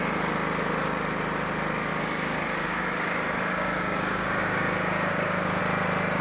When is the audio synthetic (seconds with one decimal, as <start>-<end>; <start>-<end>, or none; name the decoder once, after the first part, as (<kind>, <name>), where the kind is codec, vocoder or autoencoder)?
1.9-5.6 (codec, DAC)